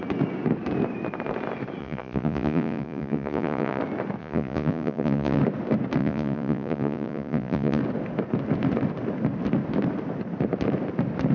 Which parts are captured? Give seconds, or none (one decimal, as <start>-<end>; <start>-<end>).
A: 0.0-1.8; 3.8-4.2; 5.4-6.0; 7.8-11.3